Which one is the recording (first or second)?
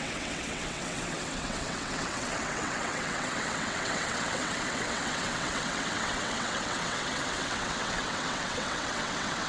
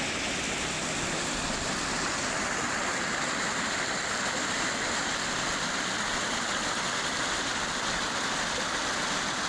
second